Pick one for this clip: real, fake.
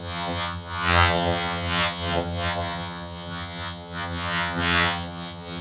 fake